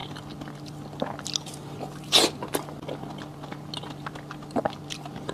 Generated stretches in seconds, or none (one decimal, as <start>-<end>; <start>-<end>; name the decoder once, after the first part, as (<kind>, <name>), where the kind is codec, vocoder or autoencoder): none